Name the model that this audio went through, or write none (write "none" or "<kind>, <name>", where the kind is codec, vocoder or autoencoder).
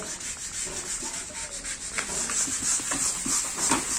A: none